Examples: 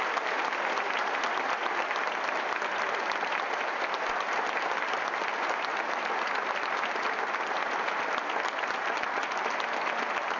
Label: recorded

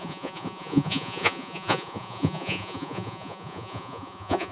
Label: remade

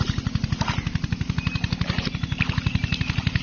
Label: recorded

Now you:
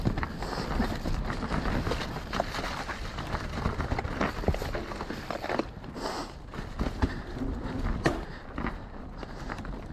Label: recorded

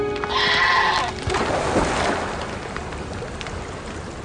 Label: recorded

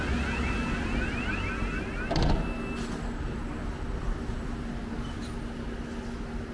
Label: recorded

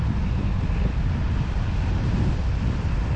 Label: recorded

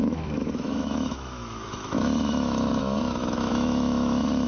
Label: remade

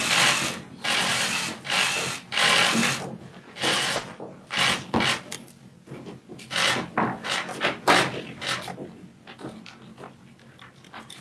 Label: recorded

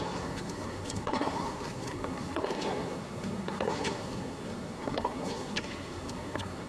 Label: remade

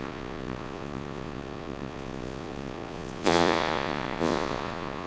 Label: remade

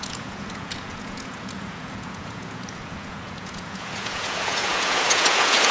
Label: remade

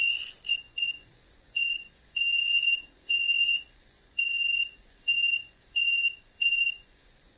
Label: remade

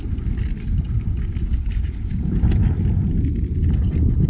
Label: recorded